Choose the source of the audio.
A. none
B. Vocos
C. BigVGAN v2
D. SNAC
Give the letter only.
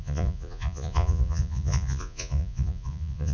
B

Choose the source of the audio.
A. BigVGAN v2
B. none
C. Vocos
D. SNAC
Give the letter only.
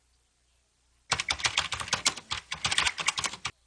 B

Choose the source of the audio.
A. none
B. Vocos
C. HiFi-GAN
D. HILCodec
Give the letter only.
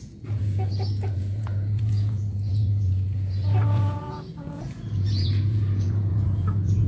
B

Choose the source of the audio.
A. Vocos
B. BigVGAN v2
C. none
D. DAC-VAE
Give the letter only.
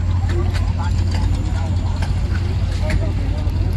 C